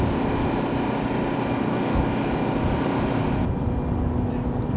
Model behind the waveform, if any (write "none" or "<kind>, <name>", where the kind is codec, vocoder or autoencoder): none